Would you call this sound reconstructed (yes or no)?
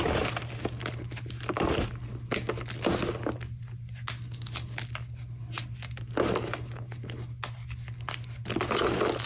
no